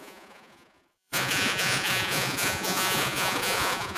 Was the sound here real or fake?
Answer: fake